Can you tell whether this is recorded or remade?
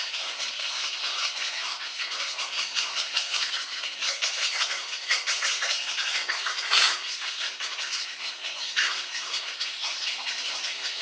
remade